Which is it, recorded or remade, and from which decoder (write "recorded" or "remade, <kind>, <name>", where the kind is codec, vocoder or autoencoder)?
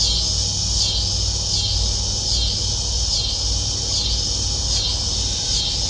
recorded